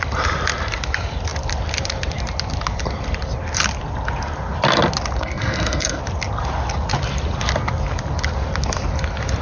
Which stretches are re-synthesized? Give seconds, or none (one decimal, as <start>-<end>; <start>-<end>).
5.2-6.0